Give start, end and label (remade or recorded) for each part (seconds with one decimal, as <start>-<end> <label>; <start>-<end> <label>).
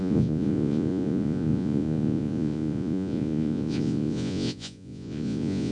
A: 0.0-5.7 remade